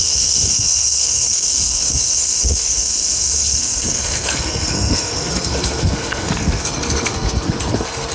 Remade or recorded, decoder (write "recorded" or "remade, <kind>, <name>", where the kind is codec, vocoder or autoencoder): remade, codec, SNAC